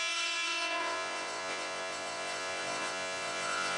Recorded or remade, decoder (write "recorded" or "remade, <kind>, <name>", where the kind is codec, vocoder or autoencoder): remade, vocoder, Vocos